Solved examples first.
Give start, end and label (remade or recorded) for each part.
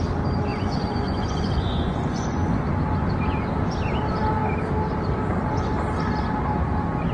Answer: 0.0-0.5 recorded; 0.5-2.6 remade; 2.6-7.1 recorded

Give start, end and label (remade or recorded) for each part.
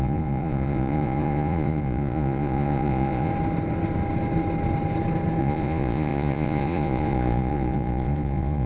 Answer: 0.0-3.3 remade; 3.3-5.4 recorded; 5.4-8.7 remade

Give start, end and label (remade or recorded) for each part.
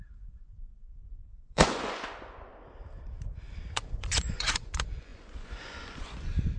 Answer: 0.0-2.5 remade; 2.5-3.7 recorded; 3.7-6.6 remade